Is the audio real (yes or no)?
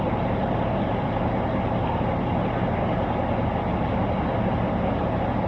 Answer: yes